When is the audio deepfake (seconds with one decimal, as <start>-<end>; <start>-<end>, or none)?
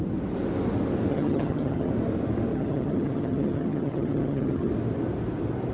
1.1-1.9; 2.5-4.7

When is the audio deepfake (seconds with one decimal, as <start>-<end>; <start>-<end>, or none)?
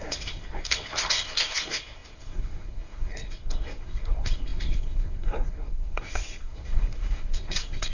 0.0-7.9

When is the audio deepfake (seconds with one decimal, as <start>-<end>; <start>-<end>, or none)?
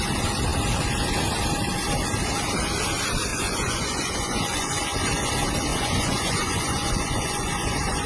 3.3-5.3; 5.7-8.1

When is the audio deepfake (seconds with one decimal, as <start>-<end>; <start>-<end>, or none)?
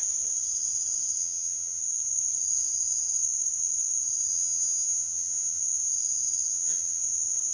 1.2-1.8; 4.3-5.6; 6.5-7.0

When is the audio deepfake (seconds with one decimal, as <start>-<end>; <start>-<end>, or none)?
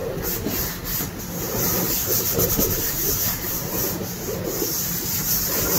none